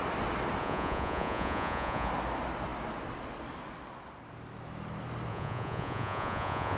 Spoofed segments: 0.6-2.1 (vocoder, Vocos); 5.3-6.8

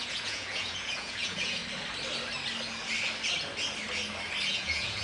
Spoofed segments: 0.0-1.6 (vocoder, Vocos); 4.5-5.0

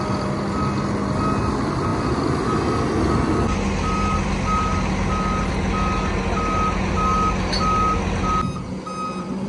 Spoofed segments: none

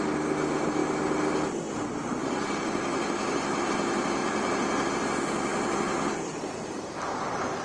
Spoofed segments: 2.2-2.7 (vocoder, BigVGAN v2); 4.2-4.9; 5.5-7.0

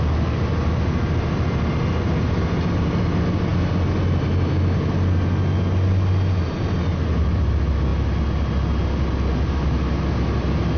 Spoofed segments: none

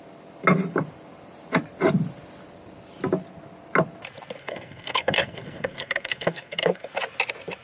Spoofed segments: 4.4-6.9 (codec, SNAC)

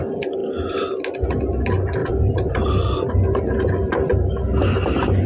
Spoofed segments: 2.0-3.1 (vocoder, BigVGAN v2)

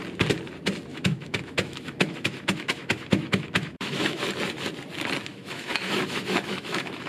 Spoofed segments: 0.9-4.2 (autoencoder, DAC-VAE); 5.3-7.1